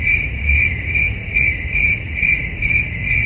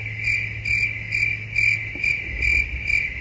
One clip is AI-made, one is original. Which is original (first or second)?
second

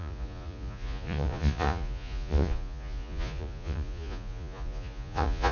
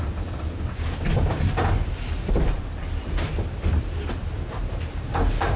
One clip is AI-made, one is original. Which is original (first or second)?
second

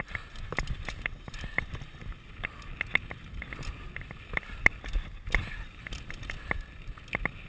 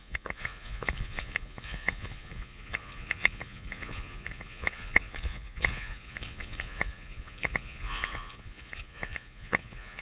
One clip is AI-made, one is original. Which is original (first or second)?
first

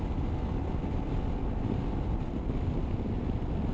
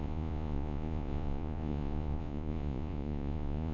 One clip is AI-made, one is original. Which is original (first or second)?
first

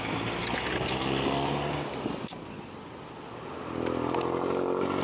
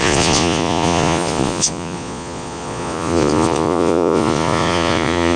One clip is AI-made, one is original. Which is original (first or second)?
first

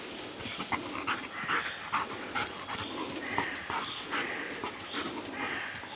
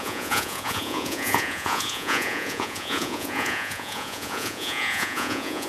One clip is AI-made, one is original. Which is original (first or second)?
first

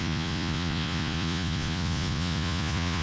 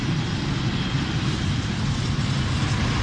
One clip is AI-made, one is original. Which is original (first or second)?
second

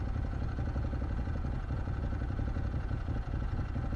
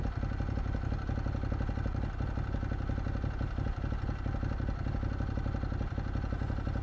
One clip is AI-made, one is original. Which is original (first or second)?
second